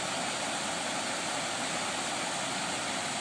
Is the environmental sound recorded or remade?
recorded